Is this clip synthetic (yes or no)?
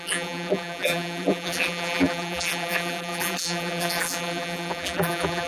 yes